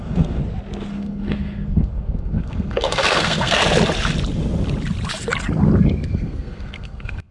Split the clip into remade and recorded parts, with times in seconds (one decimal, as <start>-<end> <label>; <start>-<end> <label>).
0.0-0.4 remade; 0.4-0.9 recorded; 0.9-3.6 remade; 3.6-6.1 recorded; 6.1-7.3 remade